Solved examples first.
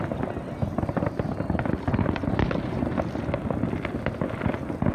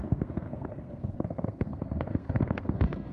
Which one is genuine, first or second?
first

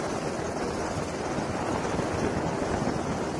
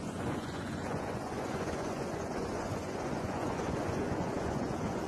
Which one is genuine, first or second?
first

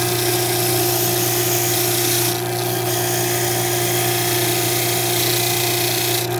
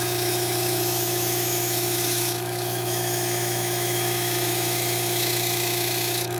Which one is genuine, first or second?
first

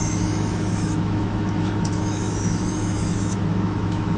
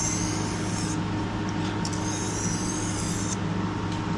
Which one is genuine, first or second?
second